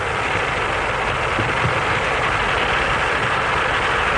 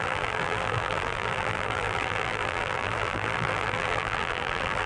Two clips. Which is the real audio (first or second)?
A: first